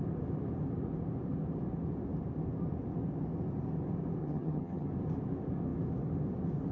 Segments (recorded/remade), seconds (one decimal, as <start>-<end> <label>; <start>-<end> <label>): 0.0-4.2 recorded; 4.2-4.9 remade; 4.9-6.7 recorded